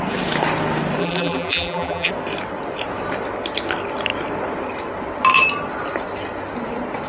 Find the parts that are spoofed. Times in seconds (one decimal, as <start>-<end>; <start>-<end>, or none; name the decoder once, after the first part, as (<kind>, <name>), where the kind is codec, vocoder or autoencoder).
1.0-2.1 (vocoder, BigVGAN v2)